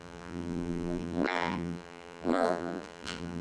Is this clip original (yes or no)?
no